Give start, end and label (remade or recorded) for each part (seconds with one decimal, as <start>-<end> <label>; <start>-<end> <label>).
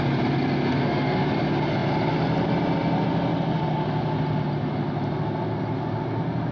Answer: 0.0-0.7 recorded; 0.7-1.3 remade; 1.3-6.5 recorded